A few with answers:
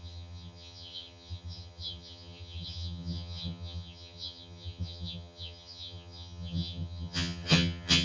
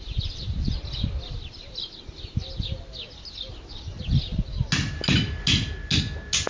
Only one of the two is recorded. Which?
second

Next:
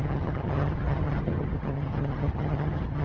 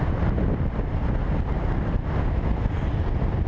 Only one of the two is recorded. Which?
second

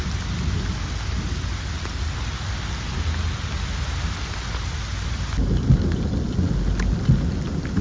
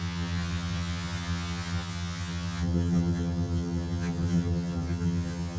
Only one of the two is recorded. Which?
first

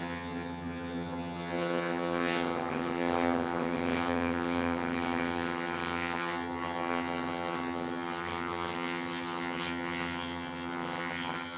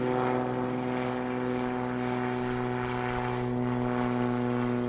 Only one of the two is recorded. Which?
second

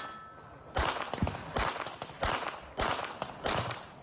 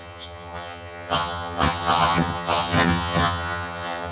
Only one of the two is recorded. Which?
first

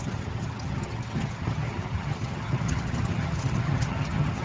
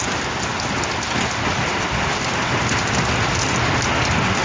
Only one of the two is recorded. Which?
second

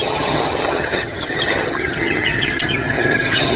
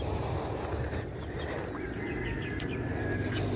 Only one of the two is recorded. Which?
second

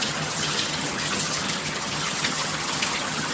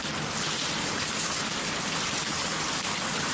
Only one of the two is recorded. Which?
second